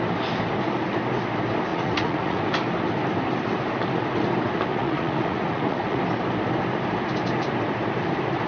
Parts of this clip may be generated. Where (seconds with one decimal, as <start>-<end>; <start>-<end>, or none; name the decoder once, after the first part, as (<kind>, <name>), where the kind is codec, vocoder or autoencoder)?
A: 1.7-2.4 (vocoder, Vocos); 4.7-6.0